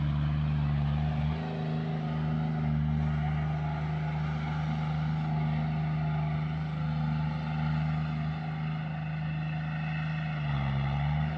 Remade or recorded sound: recorded